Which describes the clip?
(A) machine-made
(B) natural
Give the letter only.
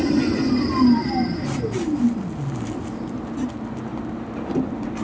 B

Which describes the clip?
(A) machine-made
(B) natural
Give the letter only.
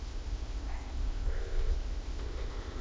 A